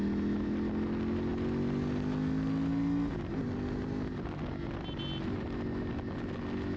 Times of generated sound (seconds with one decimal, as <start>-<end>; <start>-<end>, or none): none